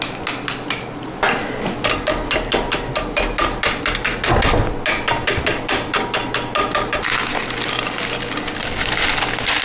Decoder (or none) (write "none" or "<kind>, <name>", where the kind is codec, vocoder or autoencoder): none